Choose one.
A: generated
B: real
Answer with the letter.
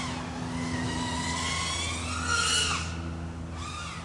B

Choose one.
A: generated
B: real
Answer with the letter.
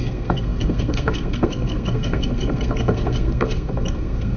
A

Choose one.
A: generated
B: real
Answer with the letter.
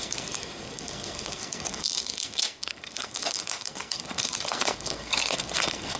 A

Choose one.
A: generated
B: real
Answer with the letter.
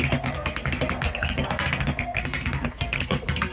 A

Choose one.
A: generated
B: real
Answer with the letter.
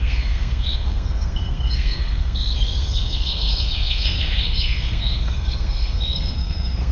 A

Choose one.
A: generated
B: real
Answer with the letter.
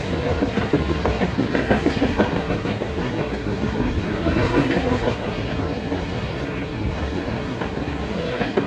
A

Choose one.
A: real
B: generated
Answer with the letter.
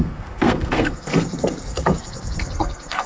B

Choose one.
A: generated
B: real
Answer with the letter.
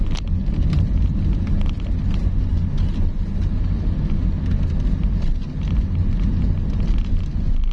B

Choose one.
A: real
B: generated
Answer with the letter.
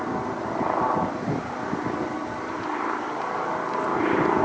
A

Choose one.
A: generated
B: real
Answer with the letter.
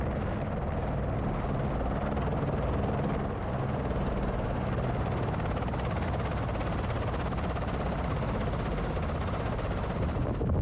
B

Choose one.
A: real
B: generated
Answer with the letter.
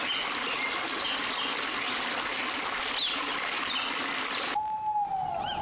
A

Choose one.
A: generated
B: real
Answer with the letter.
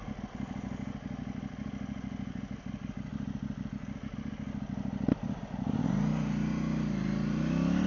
B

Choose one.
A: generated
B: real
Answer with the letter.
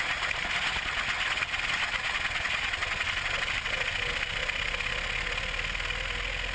B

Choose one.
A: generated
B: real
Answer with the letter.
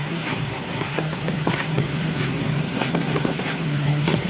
A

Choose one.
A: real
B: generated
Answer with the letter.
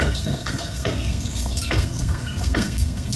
B